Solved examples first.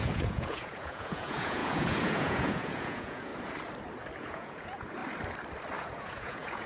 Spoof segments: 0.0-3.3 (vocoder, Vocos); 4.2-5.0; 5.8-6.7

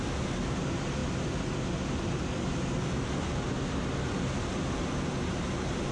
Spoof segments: none